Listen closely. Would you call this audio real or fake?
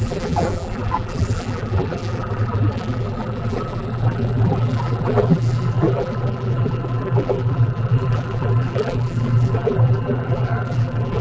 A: fake